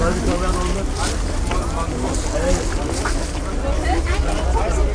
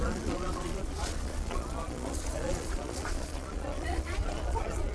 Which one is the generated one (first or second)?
second